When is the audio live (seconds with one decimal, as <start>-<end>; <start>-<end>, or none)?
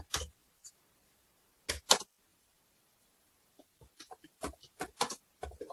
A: 0.0-2.3; 4.9-5.7